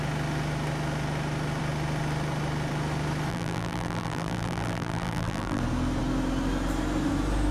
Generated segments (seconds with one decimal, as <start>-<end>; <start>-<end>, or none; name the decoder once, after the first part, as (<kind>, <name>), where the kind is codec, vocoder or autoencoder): 3.3-5.6 (vocoder, BigVGAN v2)